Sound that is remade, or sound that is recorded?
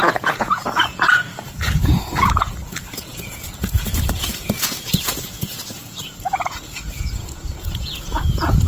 remade